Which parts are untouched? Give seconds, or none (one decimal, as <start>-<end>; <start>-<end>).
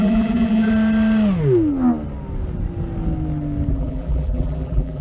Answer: 0.7-3.7